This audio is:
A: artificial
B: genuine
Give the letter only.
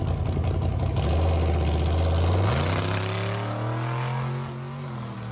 B